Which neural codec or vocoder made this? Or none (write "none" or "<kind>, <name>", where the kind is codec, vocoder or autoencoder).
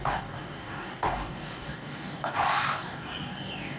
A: codec, DAC